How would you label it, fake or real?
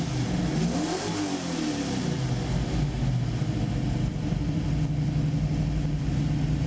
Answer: real